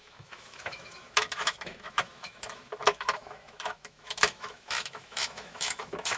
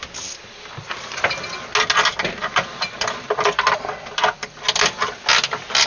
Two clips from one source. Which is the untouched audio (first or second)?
second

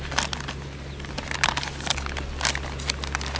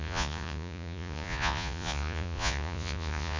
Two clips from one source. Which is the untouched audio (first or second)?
first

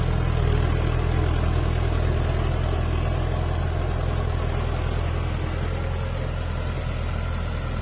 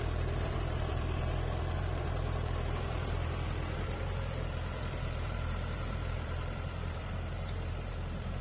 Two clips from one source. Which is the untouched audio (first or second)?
first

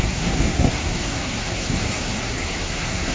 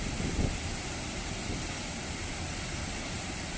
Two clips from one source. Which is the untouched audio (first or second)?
second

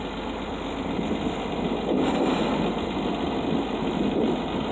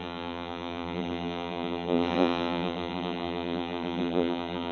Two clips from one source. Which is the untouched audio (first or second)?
first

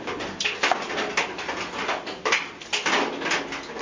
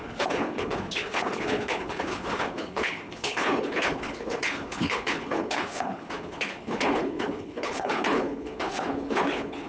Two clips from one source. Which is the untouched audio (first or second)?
first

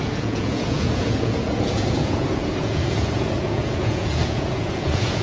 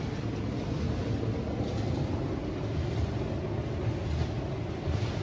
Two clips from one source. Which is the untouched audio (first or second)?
second